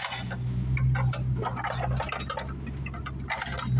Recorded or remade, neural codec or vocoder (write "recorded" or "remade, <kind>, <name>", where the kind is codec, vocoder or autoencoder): recorded